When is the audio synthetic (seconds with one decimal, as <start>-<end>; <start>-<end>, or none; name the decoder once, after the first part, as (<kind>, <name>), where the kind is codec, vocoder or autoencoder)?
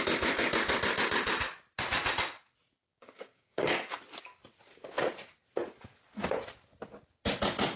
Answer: 2.9-4.0 (codec, DAC)